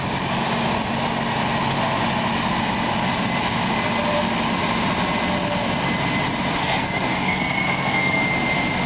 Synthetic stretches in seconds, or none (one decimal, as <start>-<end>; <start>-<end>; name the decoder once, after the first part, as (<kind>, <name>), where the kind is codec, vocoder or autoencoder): 6.6-8.2 (codec, SNAC)